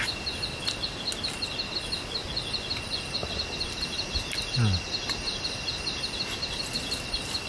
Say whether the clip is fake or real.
real